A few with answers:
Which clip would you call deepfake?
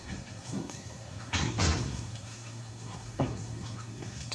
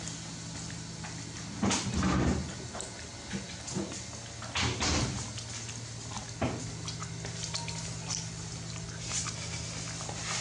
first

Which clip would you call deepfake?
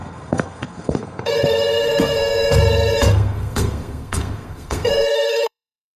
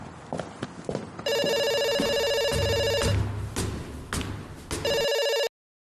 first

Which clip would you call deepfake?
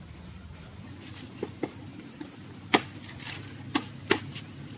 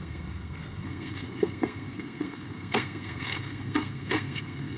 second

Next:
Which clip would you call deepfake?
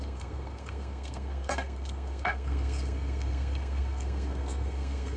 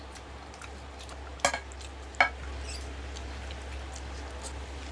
first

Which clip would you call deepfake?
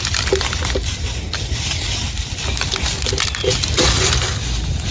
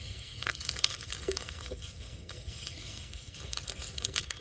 second